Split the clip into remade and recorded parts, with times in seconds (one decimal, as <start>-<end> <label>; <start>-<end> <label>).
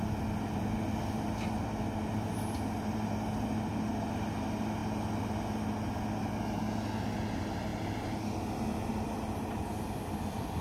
0.0-10.6 recorded